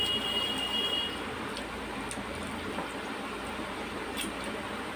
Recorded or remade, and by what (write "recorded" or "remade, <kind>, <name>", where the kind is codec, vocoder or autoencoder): recorded